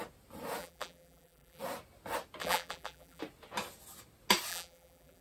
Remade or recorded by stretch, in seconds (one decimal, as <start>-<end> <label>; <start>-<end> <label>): 0.0-0.6 recorded; 0.6-1.6 remade; 1.6-2.4 recorded; 2.4-3.2 remade; 3.2-4.5 recorded; 4.5-5.2 remade